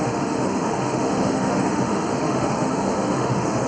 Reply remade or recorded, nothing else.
remade